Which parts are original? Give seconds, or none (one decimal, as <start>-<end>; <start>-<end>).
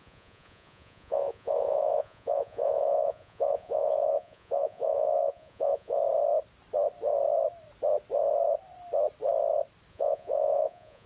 6.0-9.9